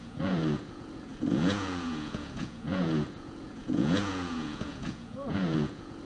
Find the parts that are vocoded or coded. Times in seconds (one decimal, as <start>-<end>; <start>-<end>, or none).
0.0-6.0

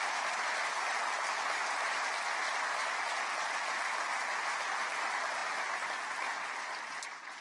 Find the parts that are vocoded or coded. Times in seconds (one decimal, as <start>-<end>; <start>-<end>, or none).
none

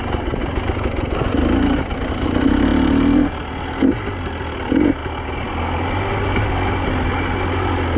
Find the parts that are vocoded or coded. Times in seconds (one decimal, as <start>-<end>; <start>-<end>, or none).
none

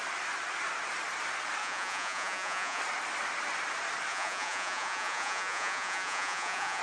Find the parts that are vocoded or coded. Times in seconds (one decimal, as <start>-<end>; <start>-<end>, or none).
1.6-2.8; 4.1-6.8

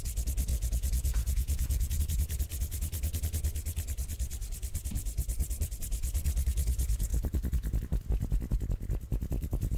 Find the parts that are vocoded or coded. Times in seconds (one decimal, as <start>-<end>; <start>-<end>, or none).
0.5-2.0

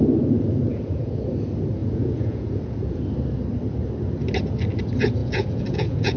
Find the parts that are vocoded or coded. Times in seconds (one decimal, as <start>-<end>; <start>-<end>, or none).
0.7-1.2; 1.8-3.0; 5.2-6.2

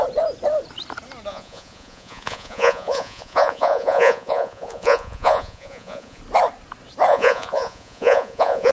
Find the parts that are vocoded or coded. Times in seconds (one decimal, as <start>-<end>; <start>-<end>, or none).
1.3-6.2; 7.1-8.7